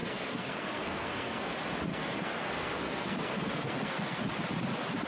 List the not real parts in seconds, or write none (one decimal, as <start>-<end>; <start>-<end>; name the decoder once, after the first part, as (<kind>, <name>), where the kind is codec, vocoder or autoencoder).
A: 0.0-1.5 (codec, SNAC); 1.9-4.2

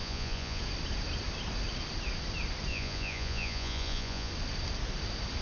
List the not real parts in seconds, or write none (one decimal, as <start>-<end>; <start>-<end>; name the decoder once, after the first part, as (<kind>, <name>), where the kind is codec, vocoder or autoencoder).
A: 0.0-0.6 (vocoder, Vocos); 2.7-4.3